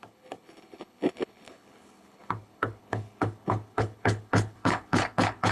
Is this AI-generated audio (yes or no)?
yes